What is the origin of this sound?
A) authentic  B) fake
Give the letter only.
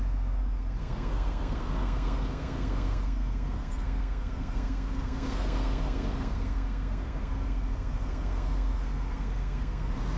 B